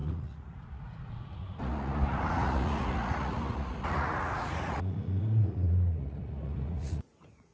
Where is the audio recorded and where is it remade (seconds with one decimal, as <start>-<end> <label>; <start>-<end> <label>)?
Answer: 0.0-7.5 remade